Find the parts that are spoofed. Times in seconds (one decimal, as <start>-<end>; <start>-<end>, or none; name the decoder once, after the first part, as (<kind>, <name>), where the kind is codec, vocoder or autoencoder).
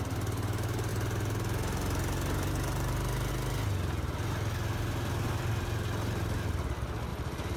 7.1-7.6 (vocoder, BigVGAN v2)